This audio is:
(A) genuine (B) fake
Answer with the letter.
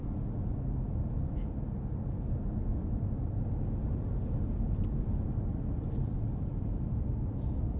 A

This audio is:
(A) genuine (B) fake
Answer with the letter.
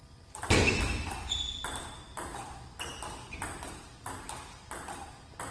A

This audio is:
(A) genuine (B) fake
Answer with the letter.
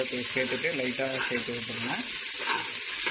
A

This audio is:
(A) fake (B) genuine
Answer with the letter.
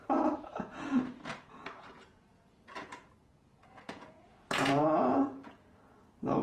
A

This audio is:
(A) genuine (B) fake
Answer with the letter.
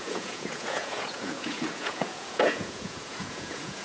B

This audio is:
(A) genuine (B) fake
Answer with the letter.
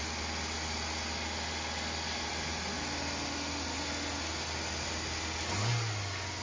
A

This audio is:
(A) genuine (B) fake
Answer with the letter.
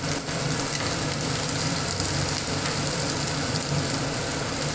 A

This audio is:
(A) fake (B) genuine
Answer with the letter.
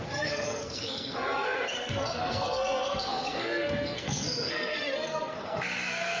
A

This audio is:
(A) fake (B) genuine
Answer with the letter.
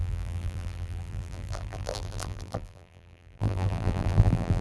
A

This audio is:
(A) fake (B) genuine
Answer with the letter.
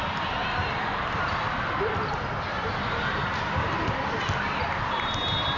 A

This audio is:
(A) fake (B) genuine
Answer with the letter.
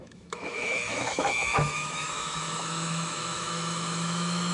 A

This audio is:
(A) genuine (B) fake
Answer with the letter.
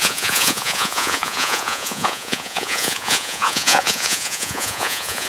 B